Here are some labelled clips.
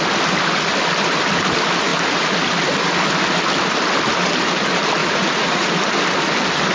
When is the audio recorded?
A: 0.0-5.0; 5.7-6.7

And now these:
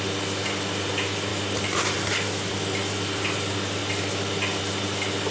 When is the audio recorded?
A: 0.0-5.3

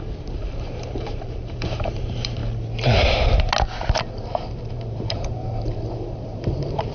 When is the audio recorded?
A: 2.4-4.7

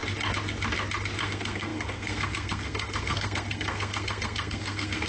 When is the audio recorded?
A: 0.0-1.2

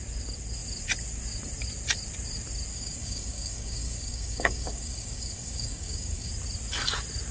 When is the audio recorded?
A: 0.0-2.7; 6.3-7.3

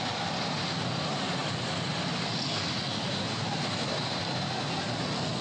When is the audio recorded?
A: 0.0-5.4

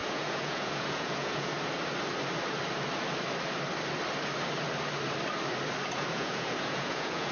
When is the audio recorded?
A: 1.5-5.9

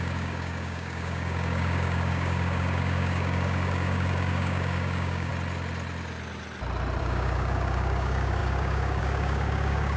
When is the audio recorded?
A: 5.3-7.0